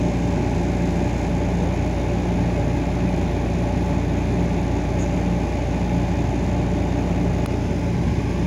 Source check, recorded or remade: recorded